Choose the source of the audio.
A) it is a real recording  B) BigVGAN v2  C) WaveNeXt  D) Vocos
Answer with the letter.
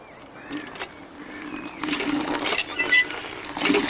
A